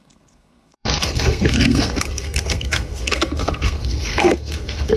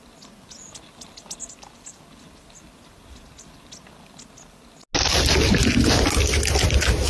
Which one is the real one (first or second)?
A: second